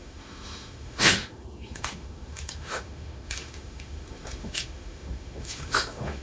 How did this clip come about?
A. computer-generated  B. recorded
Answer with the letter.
A